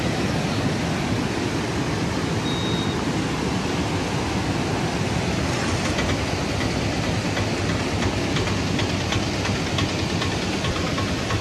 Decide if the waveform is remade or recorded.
recorded